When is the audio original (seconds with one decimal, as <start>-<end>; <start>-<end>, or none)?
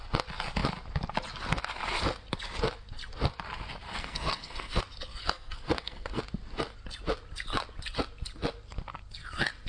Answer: 0.0-3.9; 4.8-5.2; 6.2-9.7